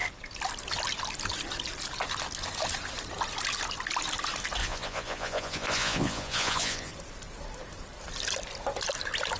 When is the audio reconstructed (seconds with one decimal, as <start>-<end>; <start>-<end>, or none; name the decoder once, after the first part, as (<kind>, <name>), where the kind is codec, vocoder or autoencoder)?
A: 4.6-6.9 (vocoder, Vocos)